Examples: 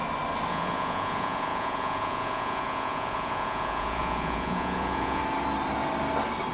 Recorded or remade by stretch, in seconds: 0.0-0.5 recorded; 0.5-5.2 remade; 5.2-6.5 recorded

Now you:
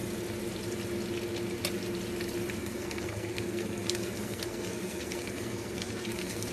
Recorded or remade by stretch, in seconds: 0.0-2.6 recorded; 2.6-6.5 remade

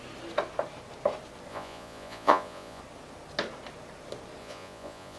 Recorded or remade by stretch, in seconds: 0.0-1.5 recorded; 1.5-2.8 remade; 2.8-4.4 recorded; 4.4-5.2 remade

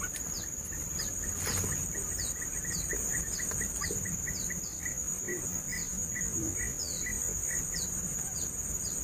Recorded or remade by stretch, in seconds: 0.0-5.3 remade; 5.3-7.7 recorded; 7.7-9.0 remade

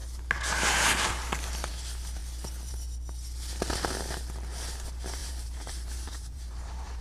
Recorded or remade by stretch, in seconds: 0.0-5.2 recorded; 5.2-7.0 remade

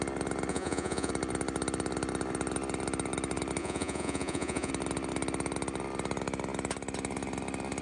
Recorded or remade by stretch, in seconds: 0.0-0.5 recorded; 0.5-1.1 remade; 1.1-3.6 recorded; 3.6-4.7 remade; 4.7-7.8 recorded